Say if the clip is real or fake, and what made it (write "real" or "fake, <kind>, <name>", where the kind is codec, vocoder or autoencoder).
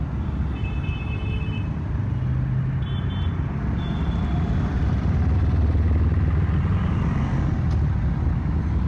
real